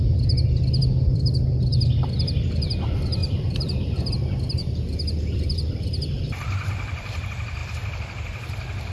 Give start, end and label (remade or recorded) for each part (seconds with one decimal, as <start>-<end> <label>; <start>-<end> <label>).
0.0-4.6 remade; 4.6-5.2 recorded; 5.2-8.9 remade